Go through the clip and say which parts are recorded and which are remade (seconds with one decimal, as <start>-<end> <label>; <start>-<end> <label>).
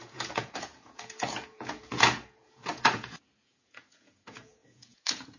0.0-5.4 remade